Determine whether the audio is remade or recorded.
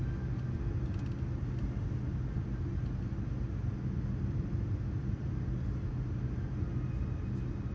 recorded